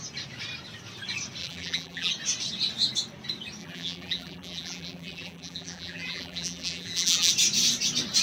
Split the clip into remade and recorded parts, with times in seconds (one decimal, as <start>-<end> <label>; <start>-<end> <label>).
0.0-1.4 recorded; 1.4-2.1 remade; 2.1-3.6 recorded; 3.6-7.3 remade; 7.3-8.2 recorded